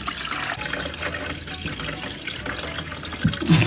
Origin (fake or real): real